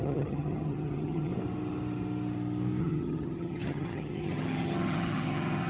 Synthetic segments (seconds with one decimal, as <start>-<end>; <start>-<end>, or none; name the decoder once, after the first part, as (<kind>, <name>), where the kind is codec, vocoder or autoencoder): 0.0-1.3 (vocoder, HiFi-GAN); 2.8-5.7